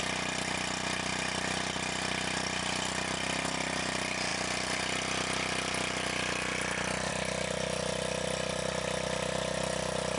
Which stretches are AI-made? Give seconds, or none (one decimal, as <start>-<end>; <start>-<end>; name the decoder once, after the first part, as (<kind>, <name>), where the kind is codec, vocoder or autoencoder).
none